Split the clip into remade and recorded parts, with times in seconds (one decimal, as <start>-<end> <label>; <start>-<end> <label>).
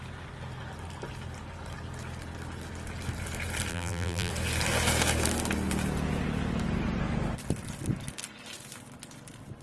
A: 0.0-3.7 recorded; 3.7-4.3 remade; 4.3-9.6 recorded